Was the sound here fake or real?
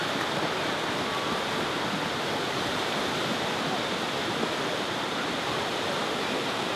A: real